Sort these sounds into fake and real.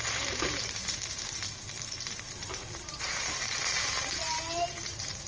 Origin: fake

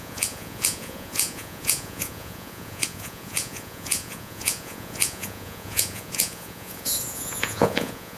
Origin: fake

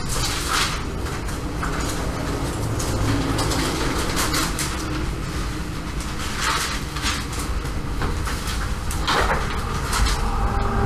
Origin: real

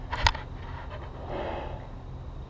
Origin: real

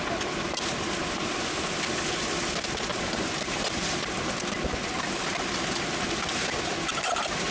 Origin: real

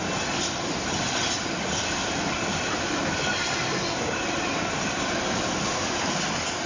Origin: real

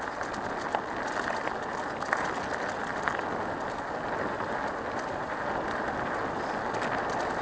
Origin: real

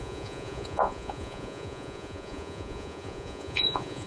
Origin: fake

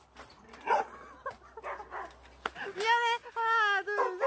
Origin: real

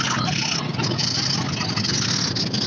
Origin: real